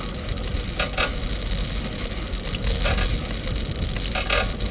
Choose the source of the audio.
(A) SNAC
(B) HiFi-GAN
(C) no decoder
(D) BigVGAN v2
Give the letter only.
C